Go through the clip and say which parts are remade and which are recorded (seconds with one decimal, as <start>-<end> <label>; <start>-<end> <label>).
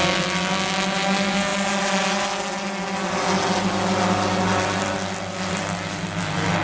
0.0-6.6 recorded